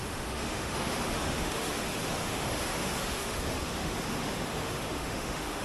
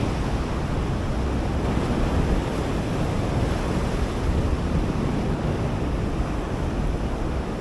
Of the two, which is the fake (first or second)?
first